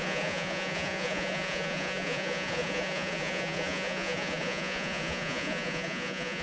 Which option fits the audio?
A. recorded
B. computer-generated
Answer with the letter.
B